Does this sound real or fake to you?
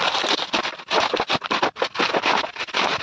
real